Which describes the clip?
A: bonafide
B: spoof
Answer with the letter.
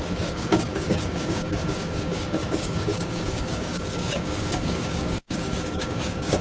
B